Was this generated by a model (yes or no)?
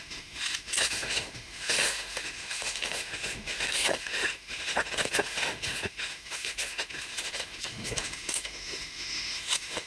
yes